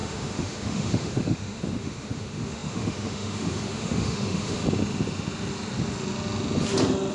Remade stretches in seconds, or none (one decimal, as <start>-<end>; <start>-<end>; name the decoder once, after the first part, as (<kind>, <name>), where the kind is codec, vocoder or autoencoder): 0.0-4.6 (autoencoder, DAC-VAE)